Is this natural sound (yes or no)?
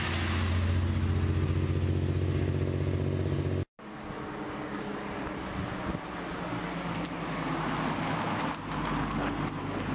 yes